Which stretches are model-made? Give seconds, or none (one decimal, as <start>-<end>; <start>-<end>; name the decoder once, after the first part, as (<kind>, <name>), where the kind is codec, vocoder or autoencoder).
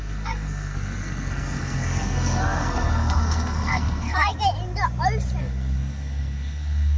0.0-4.3 (codec, SNAC); 5.4-7.0